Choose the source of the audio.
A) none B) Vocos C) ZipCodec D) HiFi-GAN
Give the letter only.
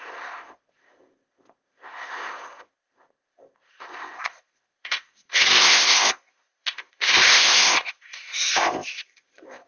C